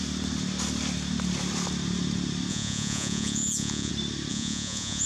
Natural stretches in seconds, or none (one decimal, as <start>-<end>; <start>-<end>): 0.0-2.5; 3.9-4.3